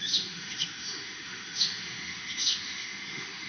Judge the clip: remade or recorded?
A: remade